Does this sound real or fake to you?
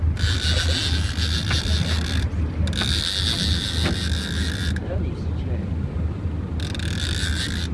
real